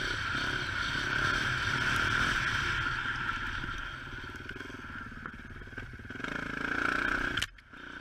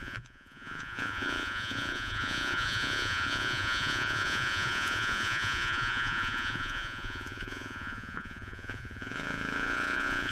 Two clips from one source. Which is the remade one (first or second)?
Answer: second